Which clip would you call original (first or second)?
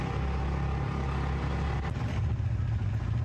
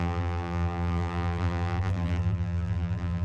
first